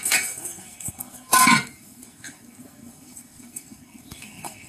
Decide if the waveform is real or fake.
fake